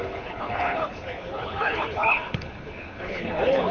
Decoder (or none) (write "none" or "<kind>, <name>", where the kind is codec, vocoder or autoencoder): codec, HILCodec